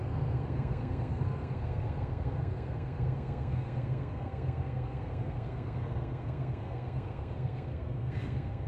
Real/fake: fake